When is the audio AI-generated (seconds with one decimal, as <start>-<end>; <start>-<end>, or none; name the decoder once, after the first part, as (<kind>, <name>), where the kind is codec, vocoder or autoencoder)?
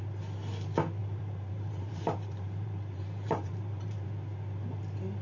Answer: 1.0-4.1 (vocoder, BigVGAN v2)